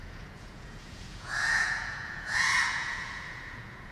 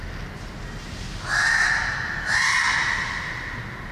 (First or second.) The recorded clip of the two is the second